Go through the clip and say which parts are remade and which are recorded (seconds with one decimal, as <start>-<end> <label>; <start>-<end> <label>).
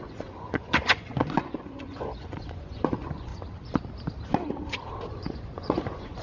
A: 0.0-3.3 remade; 3.3-5.1 recorded; 5.1-6.2 remade